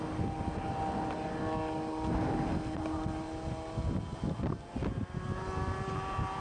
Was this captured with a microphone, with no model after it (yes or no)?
yes